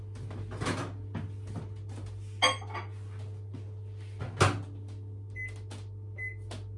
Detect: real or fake real